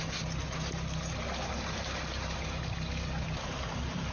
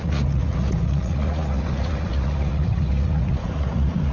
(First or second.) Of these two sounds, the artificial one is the second